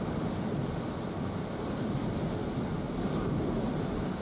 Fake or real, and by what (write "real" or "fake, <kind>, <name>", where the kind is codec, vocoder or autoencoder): real